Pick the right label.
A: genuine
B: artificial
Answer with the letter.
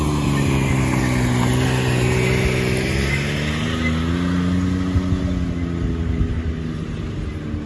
A